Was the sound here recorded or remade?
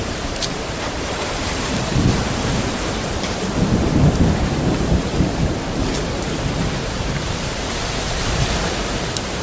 remade